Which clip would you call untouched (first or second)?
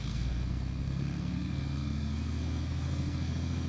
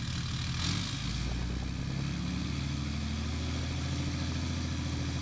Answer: second